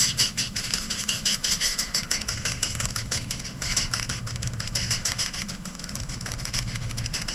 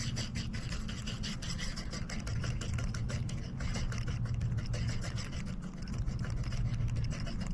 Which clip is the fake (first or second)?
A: first